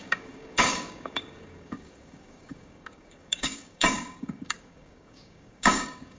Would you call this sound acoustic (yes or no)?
no